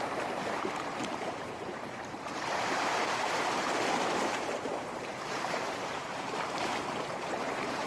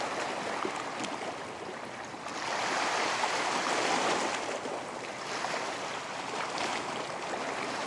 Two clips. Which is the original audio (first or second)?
second